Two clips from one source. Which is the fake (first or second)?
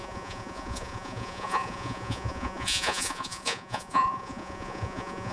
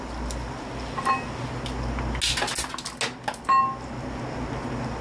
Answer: first